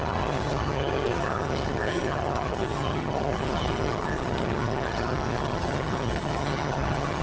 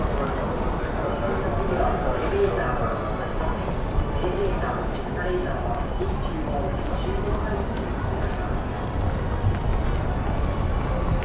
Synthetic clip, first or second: first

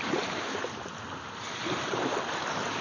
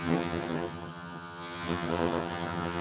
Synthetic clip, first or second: second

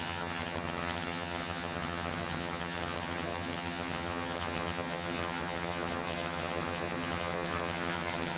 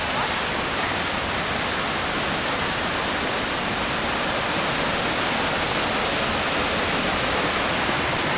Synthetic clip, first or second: first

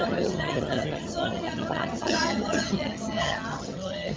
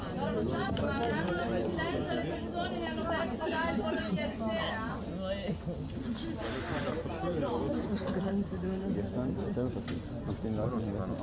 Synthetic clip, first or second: first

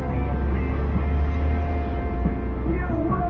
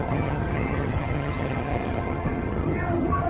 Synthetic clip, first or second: second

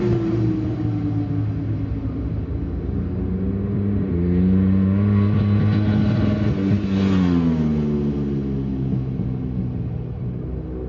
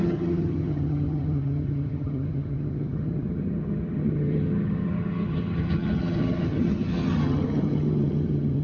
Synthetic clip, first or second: second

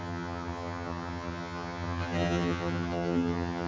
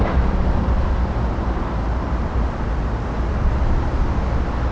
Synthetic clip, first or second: first